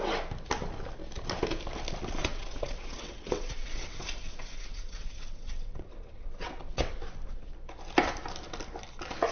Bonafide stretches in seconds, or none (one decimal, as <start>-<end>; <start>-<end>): 0.0-2.2; 7.0-9.3